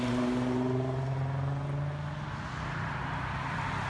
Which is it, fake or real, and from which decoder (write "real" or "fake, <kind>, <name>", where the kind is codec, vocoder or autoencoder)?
real